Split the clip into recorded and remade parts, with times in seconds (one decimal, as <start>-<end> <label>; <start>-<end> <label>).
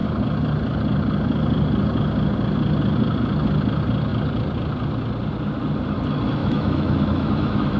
0.0-6.4 recorded; 6.4-7.8 remade